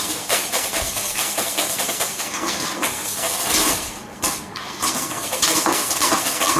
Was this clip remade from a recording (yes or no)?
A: yes